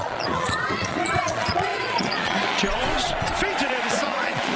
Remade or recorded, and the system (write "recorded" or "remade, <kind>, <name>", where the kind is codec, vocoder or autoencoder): remade, vocoder, Vocos